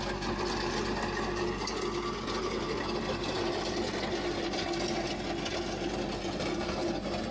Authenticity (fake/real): real